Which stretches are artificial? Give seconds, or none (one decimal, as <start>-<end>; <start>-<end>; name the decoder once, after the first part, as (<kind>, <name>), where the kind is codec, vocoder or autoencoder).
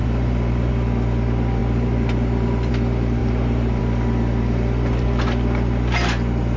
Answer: 0.0-0.7 (vocoder, BigVGAN v2); 1.6-2.7; 3.2-3.8